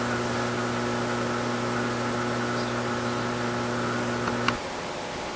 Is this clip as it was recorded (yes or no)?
yes